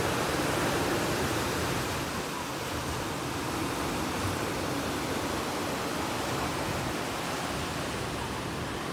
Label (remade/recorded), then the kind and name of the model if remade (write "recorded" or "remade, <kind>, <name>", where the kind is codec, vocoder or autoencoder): recorded